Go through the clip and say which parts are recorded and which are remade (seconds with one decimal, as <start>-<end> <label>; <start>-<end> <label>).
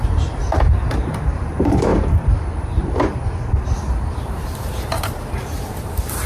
0.0-0.4 remade; 0.4-0.9 recorded; 0.9-6.3 remade